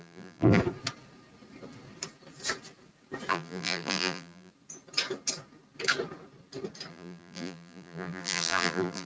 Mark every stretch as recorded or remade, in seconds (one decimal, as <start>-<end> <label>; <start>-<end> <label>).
0.0-0.6 remade; 0.6-3.3 recorded; 3.3-4.5 remade; 4.5-6.9 recorded; 6.9-9.1 remade